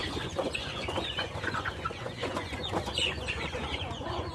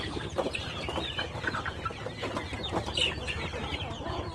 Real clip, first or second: second